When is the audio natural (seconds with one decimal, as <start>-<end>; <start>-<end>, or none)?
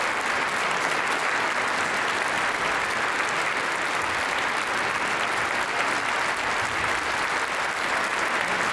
0.0-8.7